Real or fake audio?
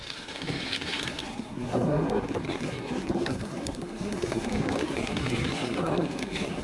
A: fake